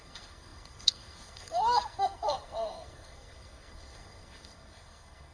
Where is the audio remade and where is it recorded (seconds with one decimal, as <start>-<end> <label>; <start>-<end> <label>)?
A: 0.0-5.3 remade